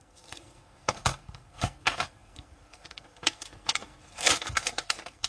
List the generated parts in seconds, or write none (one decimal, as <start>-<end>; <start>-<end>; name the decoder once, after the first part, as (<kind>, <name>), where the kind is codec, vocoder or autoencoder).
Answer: 0.0-5.3 (codec, SNAC)